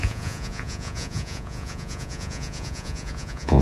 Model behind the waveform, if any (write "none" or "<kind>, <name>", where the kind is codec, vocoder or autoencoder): vocoder, Vocos